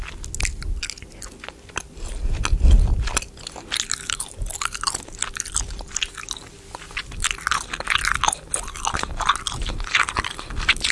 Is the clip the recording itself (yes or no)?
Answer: yes